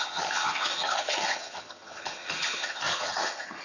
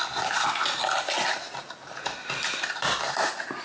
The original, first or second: second